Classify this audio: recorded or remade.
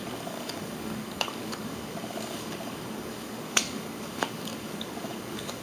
remade